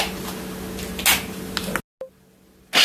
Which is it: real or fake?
real